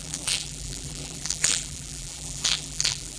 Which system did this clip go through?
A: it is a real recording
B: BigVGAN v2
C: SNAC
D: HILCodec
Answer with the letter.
B